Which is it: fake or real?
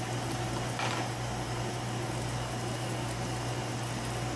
real